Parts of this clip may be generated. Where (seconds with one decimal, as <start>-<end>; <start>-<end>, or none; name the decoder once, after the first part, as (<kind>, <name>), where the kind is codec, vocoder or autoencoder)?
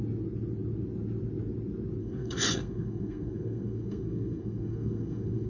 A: 2.0-5.5 (codec, SNAC)